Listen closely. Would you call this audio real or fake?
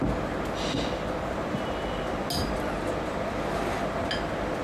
real